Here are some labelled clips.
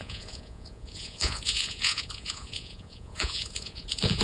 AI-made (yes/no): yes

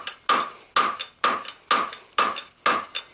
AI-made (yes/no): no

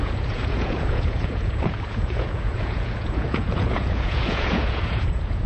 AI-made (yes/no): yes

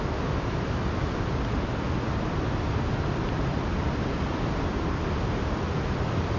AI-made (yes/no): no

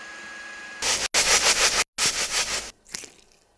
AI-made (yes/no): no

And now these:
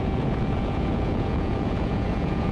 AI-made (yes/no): yes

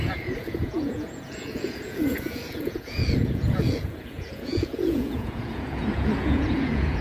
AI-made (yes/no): yes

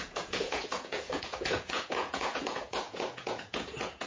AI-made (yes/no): yes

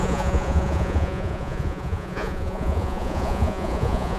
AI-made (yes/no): yes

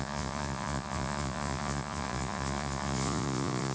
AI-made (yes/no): yes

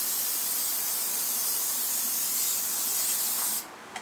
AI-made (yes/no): no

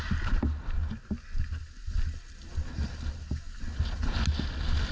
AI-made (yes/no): no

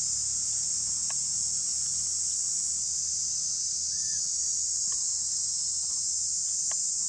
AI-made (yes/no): no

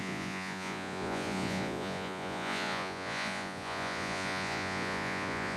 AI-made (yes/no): yes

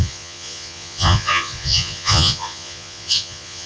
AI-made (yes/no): yes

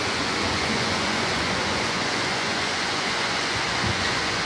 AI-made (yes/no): yes